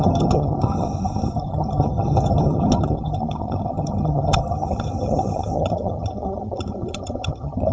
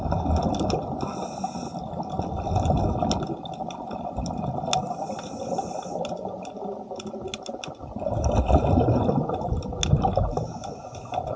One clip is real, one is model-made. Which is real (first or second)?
second